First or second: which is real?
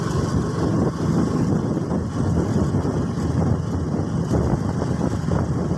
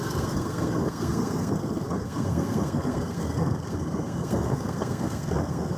first